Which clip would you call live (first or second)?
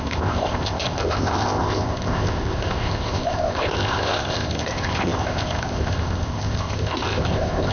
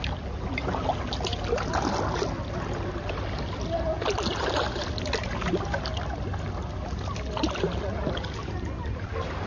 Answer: second